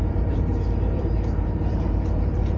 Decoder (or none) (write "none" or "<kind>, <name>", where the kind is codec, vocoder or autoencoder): vocoder, BigVGAN v2